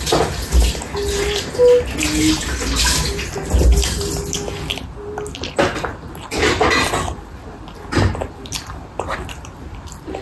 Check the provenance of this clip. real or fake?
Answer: real